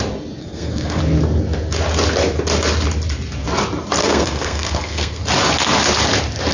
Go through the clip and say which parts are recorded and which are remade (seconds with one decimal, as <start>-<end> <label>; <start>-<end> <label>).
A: 0.0-0.4 recorded; 0.4-1.0 remade; 1.0-4.0 recorded; 4.0-5.2 remade; 5.2-6.5 recorded